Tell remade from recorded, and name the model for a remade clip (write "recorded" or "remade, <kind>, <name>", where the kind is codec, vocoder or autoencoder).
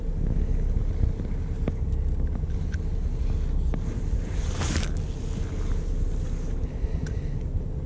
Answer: recorded